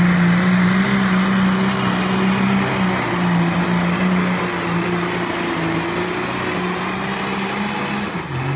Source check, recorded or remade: recorded